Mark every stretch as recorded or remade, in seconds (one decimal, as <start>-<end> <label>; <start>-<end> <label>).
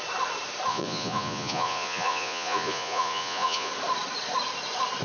0.0-0.7 recorded; 0.7-3.7 remade; 3.7-5.0 recorded